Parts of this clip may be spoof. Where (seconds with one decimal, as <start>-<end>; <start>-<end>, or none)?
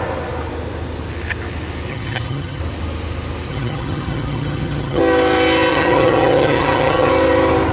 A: 1.9-2.6; 3.5-5.0; 5.7-7.1